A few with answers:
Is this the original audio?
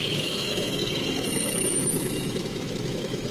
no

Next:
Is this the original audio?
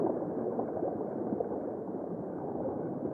yes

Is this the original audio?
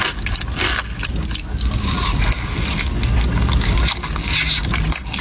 yes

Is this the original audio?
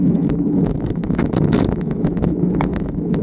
no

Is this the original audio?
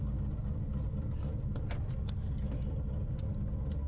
yes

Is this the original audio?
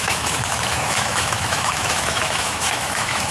no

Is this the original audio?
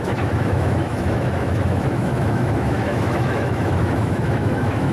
no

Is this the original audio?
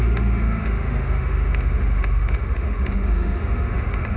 no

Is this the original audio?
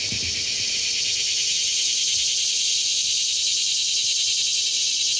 yes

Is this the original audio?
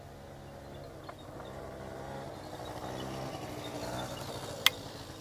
yes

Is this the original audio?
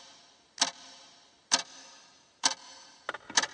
yes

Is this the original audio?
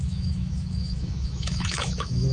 no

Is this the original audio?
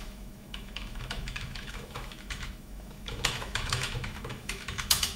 no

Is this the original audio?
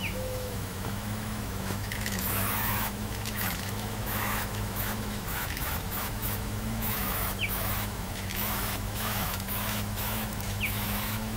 no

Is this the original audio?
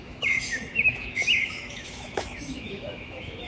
no